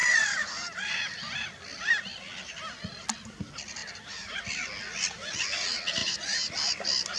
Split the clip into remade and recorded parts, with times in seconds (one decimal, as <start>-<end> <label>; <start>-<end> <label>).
0.0-0.8 remade; 0.8-3.8 recorded; 3.8-4.4 remade; 4.4-6.0 recorded; 6.0-6.5 remade; 6.5-7.2 recorded